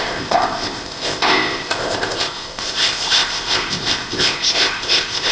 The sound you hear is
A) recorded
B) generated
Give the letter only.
B